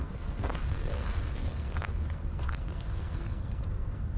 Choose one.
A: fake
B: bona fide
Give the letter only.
A